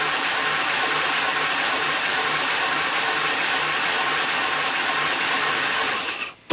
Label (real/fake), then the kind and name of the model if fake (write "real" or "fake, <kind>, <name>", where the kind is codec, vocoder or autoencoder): real